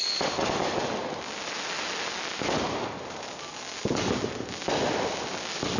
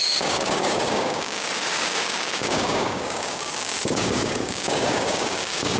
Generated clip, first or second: second